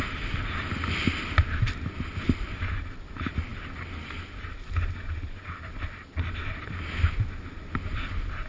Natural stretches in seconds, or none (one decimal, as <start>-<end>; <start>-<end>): 0.0-8.5